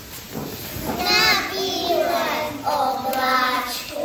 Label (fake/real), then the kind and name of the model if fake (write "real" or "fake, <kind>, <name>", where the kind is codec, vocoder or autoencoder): real